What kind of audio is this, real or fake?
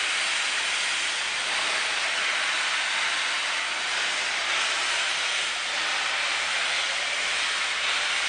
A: real